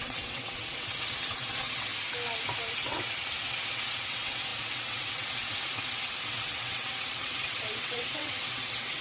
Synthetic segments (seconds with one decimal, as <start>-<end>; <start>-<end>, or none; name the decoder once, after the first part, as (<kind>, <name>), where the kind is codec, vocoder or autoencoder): 0.0-1.9 (vocoder, WaveNeXt); 2.7-9.0